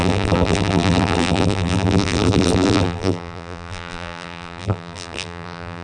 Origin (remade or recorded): remade